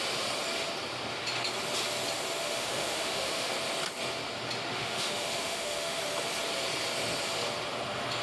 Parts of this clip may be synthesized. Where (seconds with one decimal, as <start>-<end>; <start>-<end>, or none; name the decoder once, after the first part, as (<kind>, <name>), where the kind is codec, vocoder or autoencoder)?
2.4-3.5 (autoencoder, DAC-VAE); 4.7-6.0